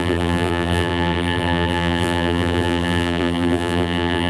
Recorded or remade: remade